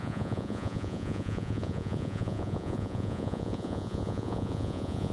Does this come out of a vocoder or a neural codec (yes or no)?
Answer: yes